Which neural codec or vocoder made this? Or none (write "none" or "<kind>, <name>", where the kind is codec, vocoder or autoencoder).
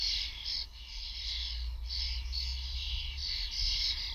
none